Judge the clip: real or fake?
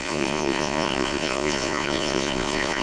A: fake